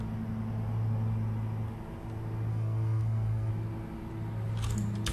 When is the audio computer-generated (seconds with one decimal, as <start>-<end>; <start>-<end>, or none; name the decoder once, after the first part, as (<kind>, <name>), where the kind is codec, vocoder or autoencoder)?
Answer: 2.5-3.5 (codec, SNAC)